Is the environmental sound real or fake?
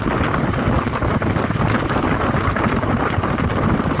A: real